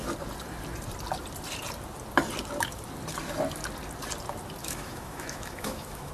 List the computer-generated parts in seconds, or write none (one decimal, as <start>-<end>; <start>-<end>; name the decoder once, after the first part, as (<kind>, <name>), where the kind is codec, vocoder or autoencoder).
4.6-6.1 (autoencoder, DAC-VAE)